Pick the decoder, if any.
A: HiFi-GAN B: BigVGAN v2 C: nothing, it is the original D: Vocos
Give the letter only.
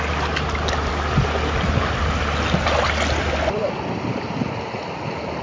C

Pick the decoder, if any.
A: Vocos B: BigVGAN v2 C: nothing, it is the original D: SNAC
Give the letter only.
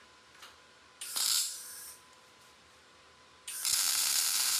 B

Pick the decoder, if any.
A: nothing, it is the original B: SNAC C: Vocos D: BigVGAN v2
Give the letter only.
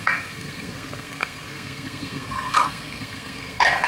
B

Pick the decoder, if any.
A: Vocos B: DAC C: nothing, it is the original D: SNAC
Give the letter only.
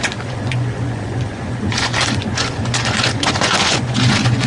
A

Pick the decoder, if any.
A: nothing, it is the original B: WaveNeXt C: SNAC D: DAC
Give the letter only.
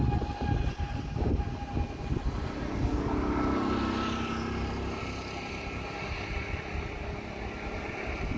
A